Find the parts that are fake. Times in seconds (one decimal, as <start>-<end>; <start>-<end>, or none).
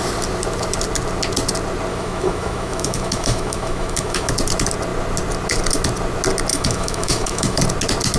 1.9-4.3; 6.5-7.6